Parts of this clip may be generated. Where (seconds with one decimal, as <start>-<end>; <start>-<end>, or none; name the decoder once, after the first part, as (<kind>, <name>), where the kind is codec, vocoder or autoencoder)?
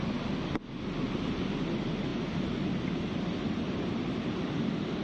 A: none